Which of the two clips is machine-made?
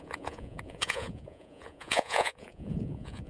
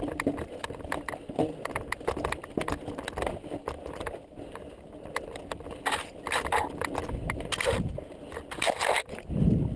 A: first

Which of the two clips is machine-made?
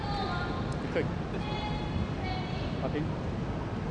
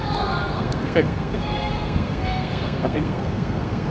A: second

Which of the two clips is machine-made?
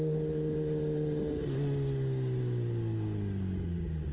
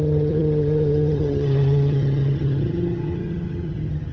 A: second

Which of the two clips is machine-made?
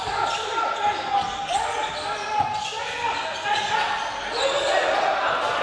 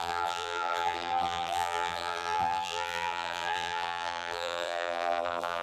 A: second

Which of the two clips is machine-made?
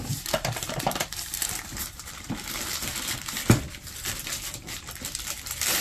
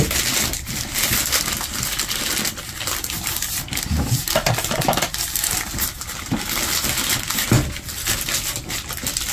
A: first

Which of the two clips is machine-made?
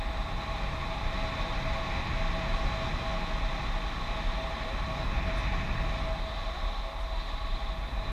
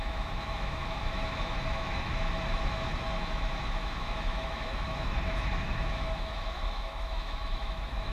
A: second